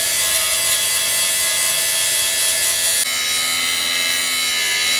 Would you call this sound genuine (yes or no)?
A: yes